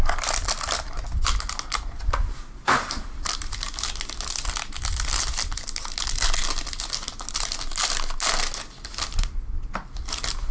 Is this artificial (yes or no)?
no